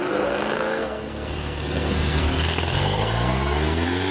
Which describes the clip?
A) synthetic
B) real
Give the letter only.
A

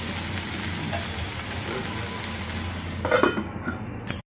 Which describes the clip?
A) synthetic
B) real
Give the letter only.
B